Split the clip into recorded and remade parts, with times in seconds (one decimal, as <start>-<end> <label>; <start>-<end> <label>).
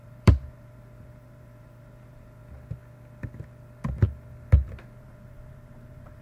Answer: 0.0-2.4 remade; 2.4-5.0 recorded; 5.0-6.2 remade